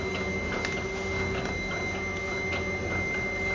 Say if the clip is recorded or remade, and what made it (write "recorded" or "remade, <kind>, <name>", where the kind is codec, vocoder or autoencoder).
recorded